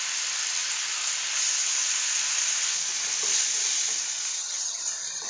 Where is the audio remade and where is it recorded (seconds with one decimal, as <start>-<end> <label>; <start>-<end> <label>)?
0.0-4.3 recorded; 4.3-4.8 remade; 4.8-5.3 recorded